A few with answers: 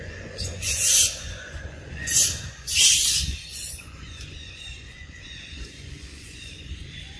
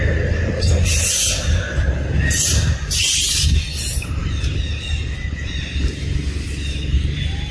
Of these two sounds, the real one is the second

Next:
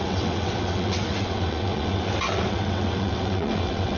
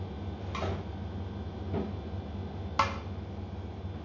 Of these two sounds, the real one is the second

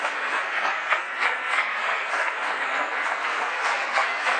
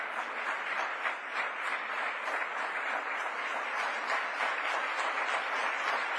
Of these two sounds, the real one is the second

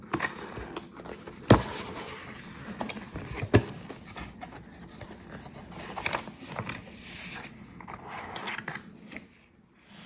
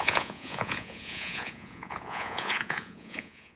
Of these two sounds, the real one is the first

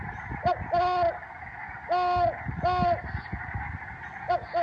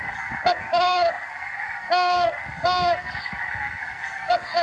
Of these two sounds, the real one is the first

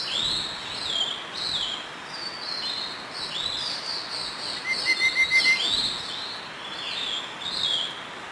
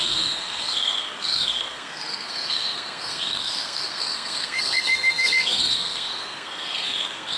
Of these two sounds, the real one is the first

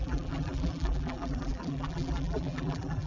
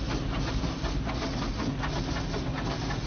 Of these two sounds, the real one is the second